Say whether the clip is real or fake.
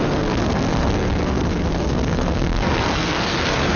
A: fake